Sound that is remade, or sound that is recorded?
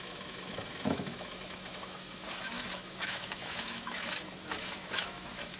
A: remade